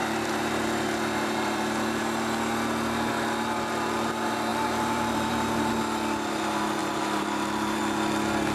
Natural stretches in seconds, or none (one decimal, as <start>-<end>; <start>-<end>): 2.0-4.5; 5.7-6.8; 7.8-8.5